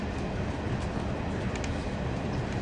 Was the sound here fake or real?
real